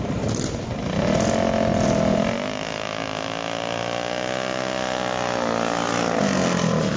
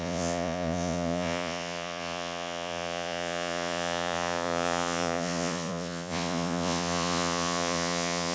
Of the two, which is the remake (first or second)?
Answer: second